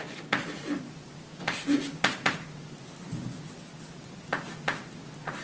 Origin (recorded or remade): recorded